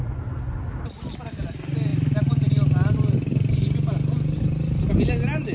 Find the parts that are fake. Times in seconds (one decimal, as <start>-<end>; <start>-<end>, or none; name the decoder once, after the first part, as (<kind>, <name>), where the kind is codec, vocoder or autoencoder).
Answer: none